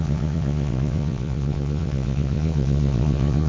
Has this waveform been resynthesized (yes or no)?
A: yes